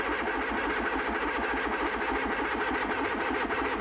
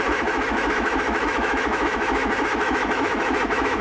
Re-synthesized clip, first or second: second